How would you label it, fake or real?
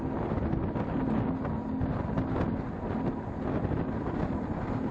real